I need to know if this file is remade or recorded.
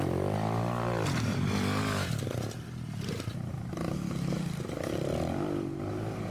recorded